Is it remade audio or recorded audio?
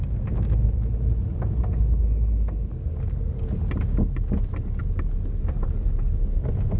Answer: recorded